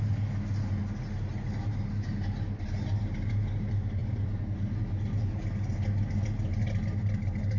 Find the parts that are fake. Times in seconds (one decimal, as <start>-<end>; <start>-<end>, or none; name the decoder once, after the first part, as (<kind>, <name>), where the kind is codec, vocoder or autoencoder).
none